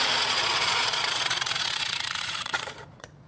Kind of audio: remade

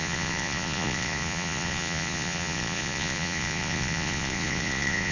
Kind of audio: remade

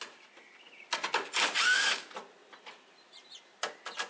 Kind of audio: recorded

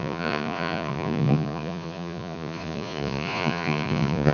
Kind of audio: remade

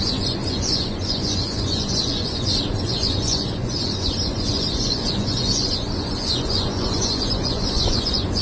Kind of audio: remade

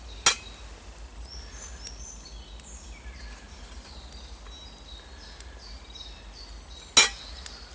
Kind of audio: recorded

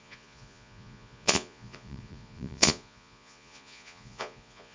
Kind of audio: remade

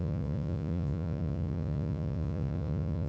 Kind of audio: remade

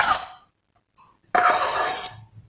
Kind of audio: recorded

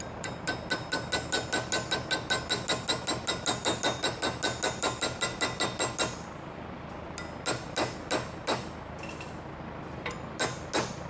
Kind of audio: recorded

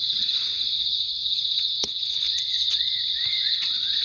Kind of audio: remade